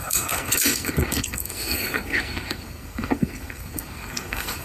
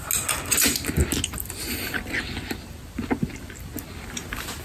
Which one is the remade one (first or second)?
first